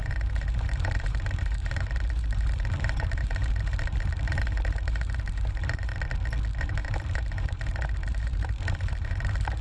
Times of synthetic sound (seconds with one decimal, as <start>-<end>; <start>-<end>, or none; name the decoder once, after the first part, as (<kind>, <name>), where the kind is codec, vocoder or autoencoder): 0.0-5.9 (vocoder, BigVGAN v2); 6.6-9.6